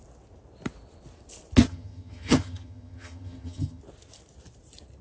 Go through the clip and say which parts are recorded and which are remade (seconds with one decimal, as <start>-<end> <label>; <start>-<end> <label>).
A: 0.0-1.6 recorded; 1.6-3.8 remade; 3.8-5.0 recorded